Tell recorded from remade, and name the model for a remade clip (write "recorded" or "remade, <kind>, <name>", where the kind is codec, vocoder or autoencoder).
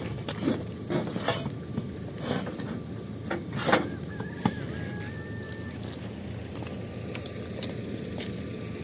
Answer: recorded